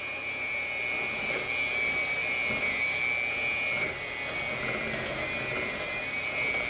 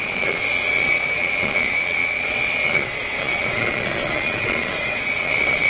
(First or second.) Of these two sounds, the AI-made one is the second